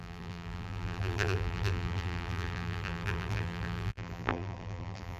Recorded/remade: remade